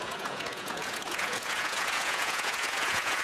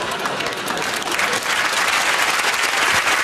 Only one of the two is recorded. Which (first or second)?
second